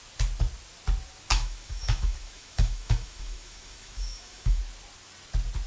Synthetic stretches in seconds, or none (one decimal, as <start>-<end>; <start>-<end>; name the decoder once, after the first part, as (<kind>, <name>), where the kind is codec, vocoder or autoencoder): 1.3-4.6 (autoencoder, DAC-VAE)

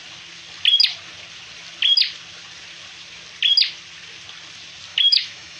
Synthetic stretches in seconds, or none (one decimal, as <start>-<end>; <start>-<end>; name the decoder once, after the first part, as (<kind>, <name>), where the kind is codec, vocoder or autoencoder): 4.9-5.6 (autoencoder, DAC-VAE)

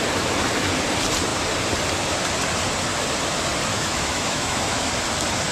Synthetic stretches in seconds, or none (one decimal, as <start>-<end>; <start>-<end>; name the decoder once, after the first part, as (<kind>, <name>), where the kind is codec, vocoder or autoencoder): 3.7-4.9 (autoencoder, DAC-VAE)

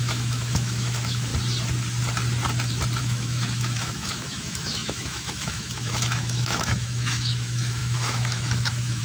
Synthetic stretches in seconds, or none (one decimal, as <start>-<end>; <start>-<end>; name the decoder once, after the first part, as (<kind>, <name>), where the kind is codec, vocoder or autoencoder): 0.0-1.3 (autoencoder, DAC-VAE); 3.0-9.0

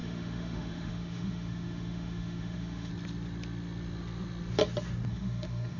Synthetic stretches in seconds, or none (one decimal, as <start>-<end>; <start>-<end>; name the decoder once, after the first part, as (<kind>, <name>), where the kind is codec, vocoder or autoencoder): 0.0-2.9 (autoencoder, DAC-VAE); 5.1-5.8

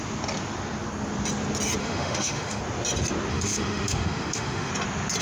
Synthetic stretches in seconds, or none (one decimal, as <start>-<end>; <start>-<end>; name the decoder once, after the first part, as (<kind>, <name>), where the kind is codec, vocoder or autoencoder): 1.8-2.6 (autoencoder, DAC-VAE); 3.3-4.7

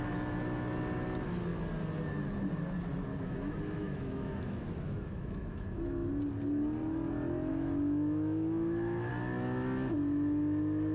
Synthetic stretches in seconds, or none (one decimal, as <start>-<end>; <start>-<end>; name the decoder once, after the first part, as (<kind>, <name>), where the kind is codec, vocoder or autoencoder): 3.1-6.1 (autoencoder, DAC-VAE); 7.5-9.1

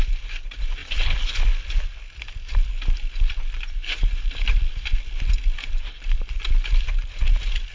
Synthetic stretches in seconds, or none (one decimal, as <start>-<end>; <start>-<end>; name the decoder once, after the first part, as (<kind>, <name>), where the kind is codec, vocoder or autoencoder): none